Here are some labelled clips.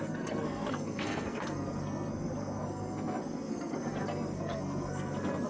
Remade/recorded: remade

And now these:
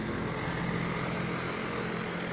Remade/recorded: recorded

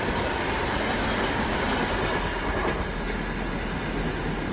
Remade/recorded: recorded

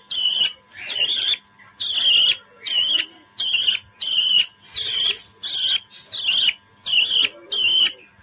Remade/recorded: recorded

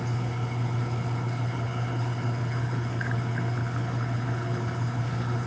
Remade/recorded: remade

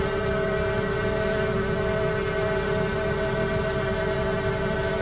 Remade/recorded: recorded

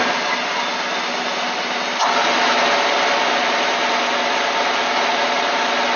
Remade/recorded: recorded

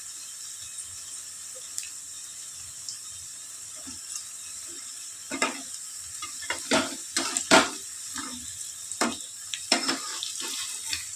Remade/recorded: remade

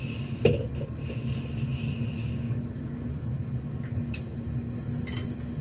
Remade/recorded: recorded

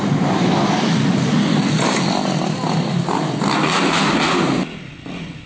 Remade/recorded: recorded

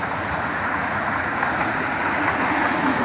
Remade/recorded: remade